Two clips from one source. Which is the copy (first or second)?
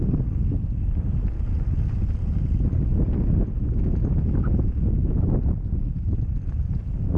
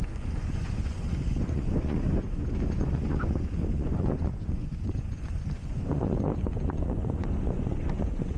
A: second